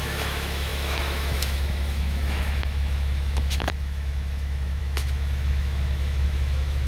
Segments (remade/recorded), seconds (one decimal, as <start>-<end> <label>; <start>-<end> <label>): 0.0-6.9 remade